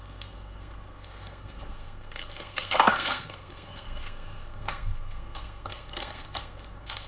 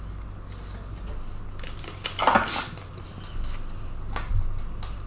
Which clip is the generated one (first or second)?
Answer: first